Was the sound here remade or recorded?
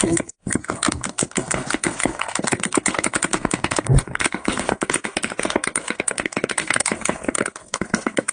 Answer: remade